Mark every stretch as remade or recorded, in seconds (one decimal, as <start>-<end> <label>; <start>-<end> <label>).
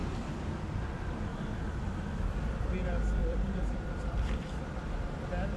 0.0-1.3 recorded; 1.3-2.0 remade; 2.0-3.2 recorded; 3.2-4.6 remade; 4.6-5.6 recorded